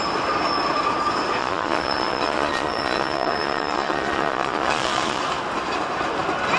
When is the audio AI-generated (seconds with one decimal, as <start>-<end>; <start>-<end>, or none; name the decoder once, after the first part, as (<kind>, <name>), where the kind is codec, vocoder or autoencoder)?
1.4-5.2 (vocoder, Vocos)